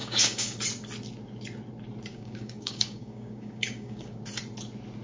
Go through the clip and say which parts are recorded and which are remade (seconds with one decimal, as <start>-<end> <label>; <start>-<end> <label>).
0.0-0.6 remade; 0.6-2.1 recorded; 2.1-4.2 remade; 4.2-5.0 recorded